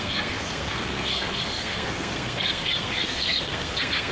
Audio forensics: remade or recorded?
remade